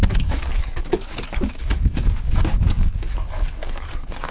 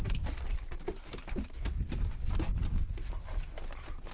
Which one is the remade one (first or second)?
first